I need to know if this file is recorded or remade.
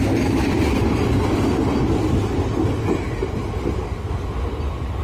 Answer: recorded